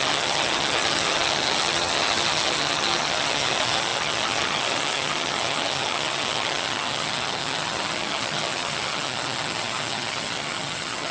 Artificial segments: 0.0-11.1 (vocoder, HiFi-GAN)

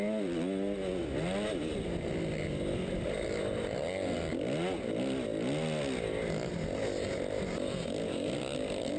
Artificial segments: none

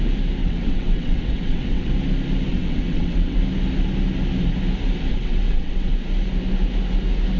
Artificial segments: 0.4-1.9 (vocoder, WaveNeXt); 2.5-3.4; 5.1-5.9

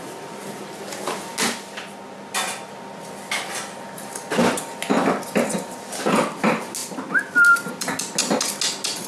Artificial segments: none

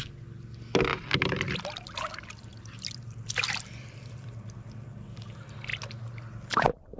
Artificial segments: 0.9-1.6 (vocoder, BigVGAN v2); 2.5-5.3